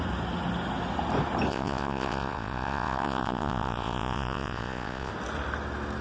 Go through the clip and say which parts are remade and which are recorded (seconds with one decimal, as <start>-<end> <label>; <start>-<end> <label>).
0.0-1.5 recorded; 1.5-5.1 remade; 5.1-6.0 recorded